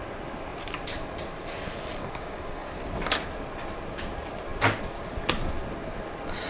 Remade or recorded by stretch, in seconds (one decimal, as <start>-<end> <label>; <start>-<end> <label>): 0.0-0.5 recorded; 0.5-1.2 remade; 1.2-2.6 recorded; 2.6-3.3 remade; 3.3-6.5 recorded